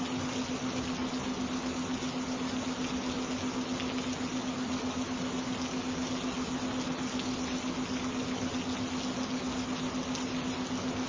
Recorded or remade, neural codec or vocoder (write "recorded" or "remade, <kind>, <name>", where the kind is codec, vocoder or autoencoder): recorded